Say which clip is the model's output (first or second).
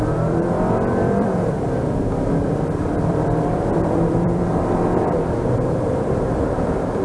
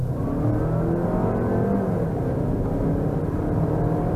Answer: first